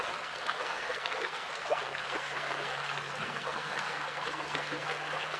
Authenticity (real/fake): fake